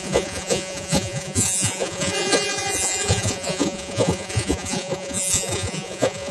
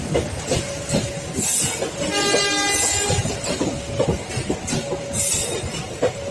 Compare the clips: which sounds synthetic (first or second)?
first